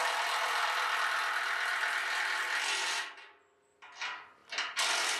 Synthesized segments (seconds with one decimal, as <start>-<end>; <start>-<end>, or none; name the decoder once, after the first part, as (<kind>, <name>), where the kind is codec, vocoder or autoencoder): none